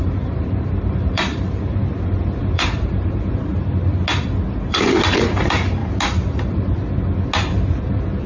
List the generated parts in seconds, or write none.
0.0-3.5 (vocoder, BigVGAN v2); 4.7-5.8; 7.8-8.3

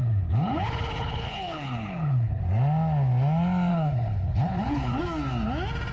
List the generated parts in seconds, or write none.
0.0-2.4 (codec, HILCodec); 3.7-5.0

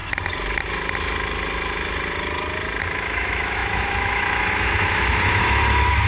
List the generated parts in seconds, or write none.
2.8-6.1 (autoencoder, DAC-VAE)

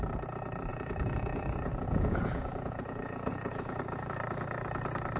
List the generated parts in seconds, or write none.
0.7-3.8 (vocoder, Vocos)

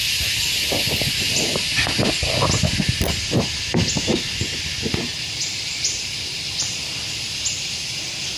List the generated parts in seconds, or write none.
0.0-0.9 (vocoder, BigVGAN v2); 5.1-8.4

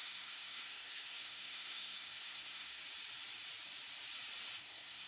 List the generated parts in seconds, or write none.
0.0-2.8 (codec, SNAC); 4.6-5.1

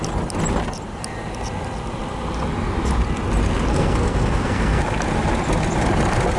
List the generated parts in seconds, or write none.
3.7-4.8 (codec, SNAC)